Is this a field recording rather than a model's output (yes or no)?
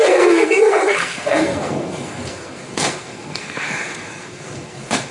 no